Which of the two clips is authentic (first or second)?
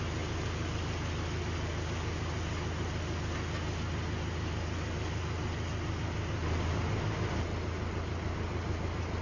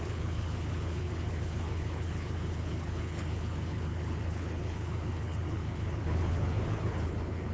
first